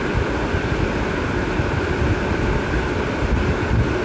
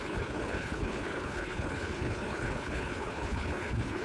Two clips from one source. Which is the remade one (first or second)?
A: second